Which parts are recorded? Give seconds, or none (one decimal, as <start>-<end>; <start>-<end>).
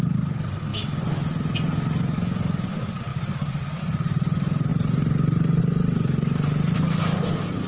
0.0-7.7